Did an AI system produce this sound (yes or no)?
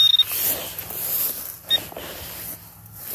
no